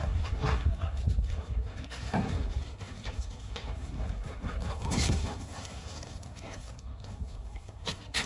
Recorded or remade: remade